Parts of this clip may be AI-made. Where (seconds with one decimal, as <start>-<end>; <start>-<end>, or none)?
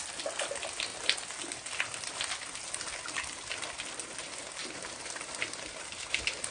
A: 4.6-5.2